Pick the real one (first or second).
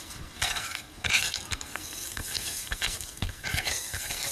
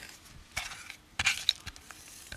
second